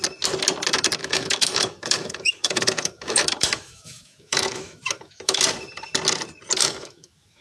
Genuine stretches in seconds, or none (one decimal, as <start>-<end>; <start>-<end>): 0.0-1.0; 5.4-6.6